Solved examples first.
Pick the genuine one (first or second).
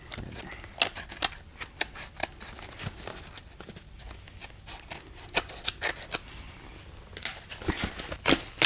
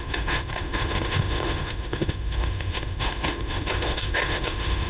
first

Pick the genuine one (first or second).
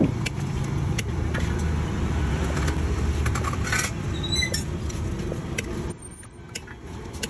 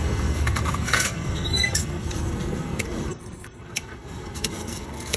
first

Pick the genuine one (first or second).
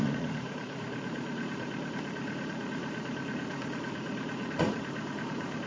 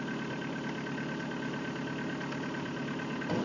second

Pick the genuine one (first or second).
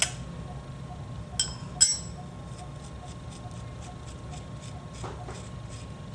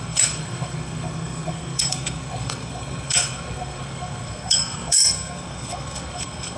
first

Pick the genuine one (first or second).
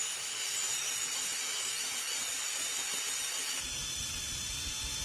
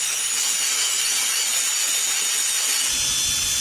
second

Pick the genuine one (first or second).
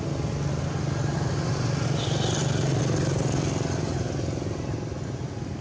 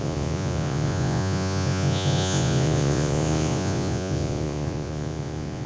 first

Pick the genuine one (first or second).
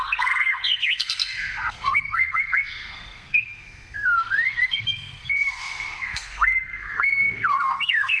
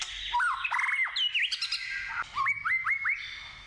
second